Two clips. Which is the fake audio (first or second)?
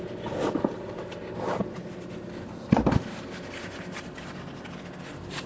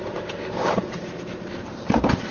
second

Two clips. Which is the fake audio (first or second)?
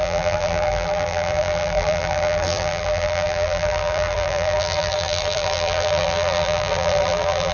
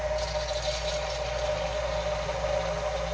first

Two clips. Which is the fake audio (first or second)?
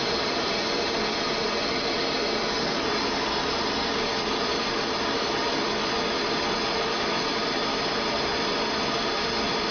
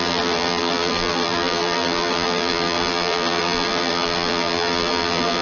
second